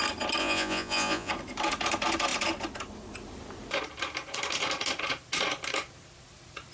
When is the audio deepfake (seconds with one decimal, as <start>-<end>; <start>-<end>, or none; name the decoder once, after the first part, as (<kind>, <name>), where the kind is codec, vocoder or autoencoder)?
0.4-1.3 (vocoder, Vocos)